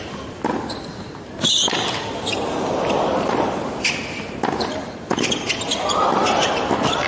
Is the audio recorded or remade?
recorded